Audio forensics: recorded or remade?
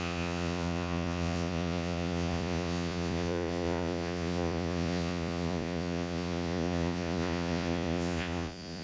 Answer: remade